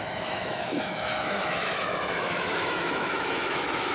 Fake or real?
fake